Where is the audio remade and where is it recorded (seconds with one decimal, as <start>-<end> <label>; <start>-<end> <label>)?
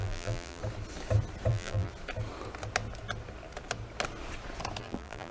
0.0-0.6 remade; 0.6-1.5 recorded; 1.5-1.9 remade; 1.9-4.8 recorded; 4.8-5.3 remade